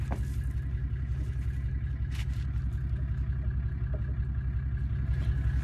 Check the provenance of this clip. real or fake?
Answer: real